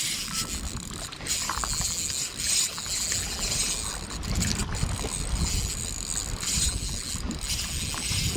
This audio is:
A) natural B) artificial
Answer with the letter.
A